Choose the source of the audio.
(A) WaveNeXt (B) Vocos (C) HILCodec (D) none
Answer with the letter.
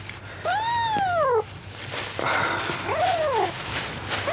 D